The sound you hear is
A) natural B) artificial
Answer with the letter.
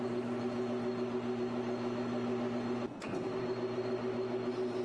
A